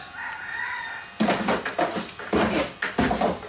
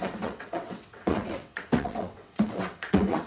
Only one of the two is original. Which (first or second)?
first